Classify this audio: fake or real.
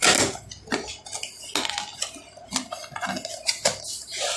real